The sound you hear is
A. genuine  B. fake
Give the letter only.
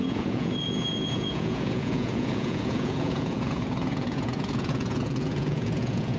B